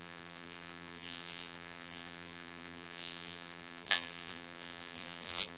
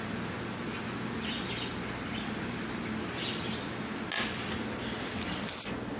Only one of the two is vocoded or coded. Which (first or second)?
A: first